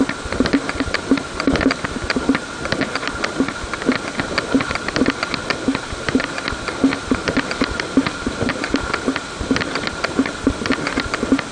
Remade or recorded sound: recorded